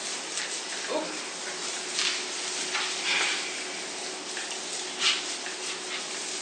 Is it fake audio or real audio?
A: real